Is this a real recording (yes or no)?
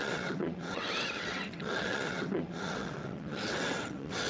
no